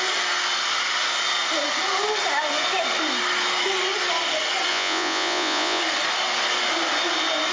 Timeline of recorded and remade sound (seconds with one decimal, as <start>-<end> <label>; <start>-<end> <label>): 0.0-4.7 recorded; 4.7-5.8 remade; 5.8-7.5 recorded